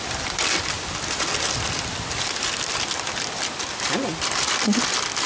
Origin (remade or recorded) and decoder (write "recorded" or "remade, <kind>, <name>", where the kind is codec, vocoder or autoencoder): remade, vocoder, BigVGAN v2